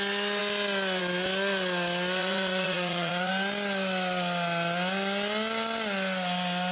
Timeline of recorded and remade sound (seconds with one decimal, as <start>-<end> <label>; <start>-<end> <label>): 0.0-2.2 recorded; 2.2-3.3 remade; 3.3-6.7 recorded